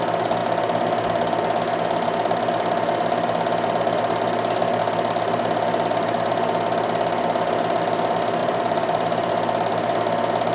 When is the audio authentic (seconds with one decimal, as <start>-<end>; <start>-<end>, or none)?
0.0-8.4; 9.3-10.5